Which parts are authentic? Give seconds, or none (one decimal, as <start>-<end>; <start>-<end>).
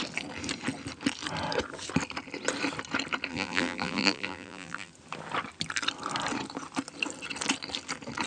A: 0.0-3.3; 4.9-8.3